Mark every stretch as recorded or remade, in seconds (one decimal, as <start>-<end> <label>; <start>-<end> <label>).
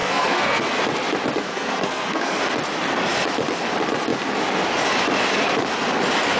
0.0-0.6 remade; 0.6-1.5 recorded; 1.5-2.4 remade; 2.4-6.4 recorded